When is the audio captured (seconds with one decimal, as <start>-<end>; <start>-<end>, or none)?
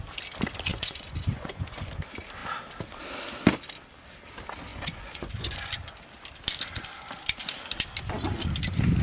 0.0-0.7; 1.9-4.7; 5.7-9.0